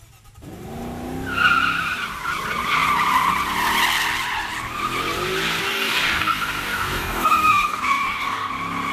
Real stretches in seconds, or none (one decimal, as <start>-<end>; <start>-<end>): 0.0-5.6; 8.5-8.9